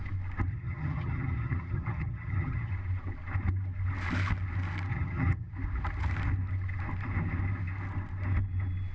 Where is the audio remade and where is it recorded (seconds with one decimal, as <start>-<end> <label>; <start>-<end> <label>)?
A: 0.0-0.5 recorded; 0.5-2.7 remade; 2.7-4.9 recorded; 4.9-5.5 remade; 5.5-8.9 recorded

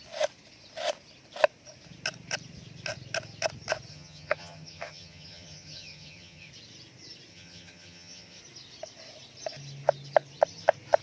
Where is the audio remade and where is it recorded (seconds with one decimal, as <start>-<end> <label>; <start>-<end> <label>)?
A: 0.0-3.9 recorded; 3.9-6.5 remade; 6.5-7.3 recorded; 7.3-8.4 remade; 8.4-11.0 recorded

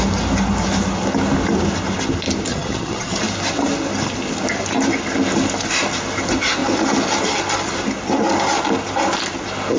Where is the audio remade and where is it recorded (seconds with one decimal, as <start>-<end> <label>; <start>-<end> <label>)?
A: 0.0-2.5 recorded; 2.5-3.2 remade; 3.2-9.8 recorded